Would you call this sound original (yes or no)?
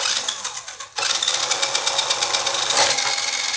yes